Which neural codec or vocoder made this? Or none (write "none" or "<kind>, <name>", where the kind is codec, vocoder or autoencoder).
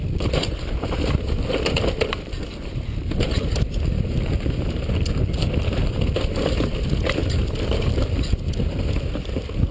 none